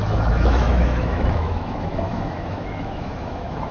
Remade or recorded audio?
remade